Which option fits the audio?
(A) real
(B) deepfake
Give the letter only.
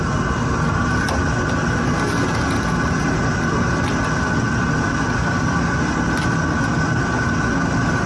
A